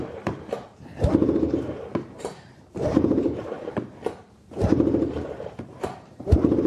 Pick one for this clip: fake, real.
fake